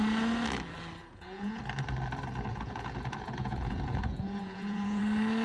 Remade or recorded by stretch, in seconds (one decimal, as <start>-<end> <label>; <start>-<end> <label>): 0.0-1.0 recorded; 1.0-1.6 remade; 1.6-2.5 recorded; 2.5-5.0 remade; 5.0-5.4 recorded